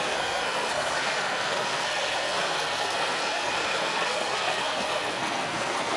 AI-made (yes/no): yes